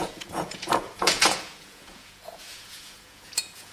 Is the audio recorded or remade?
remade